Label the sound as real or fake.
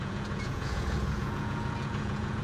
fake